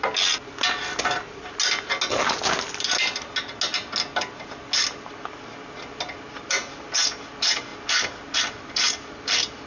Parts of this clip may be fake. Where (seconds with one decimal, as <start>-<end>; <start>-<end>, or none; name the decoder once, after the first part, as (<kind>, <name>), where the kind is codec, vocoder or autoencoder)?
none